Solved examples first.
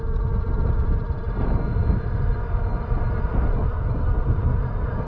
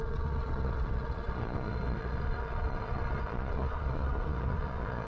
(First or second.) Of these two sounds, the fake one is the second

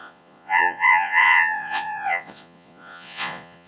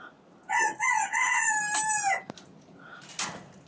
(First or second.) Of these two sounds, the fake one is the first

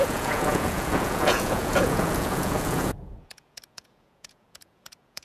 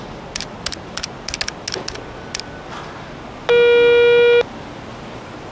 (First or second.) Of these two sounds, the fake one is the first